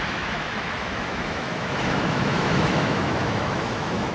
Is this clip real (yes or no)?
no